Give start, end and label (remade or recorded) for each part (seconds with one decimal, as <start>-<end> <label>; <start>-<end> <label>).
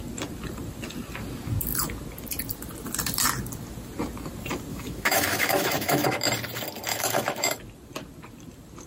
0.0-4.7 recorded; 4.7-6.2 remade; 6.2-6.9 recorded; 6.9-7.6 remade; 7.6-8.9 recorded